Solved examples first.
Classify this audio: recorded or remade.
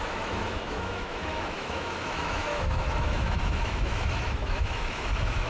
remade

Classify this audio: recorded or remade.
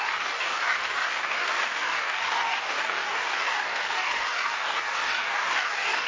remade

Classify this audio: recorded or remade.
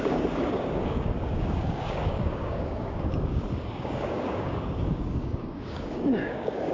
remade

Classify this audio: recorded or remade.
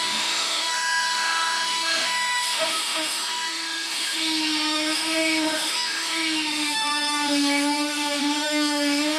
remade